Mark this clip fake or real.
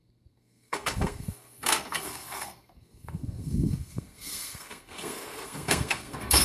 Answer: fake